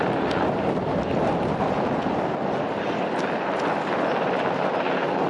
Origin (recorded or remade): recorded